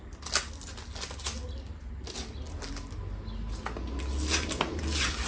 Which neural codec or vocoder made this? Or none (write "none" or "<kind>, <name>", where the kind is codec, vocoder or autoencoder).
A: none